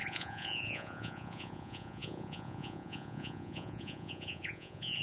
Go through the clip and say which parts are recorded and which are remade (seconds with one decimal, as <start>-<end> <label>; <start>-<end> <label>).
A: 0.0-5.0 remade